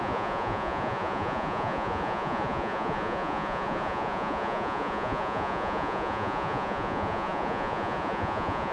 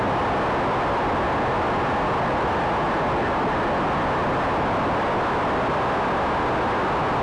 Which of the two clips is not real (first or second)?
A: first